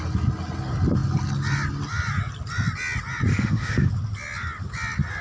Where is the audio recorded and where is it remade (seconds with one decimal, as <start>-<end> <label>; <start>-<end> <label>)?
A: 0.0-3.3 recorded; 3.3-3.9 remade; 3.9-5.2 recorded